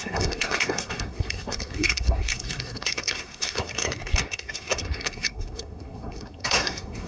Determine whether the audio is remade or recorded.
remade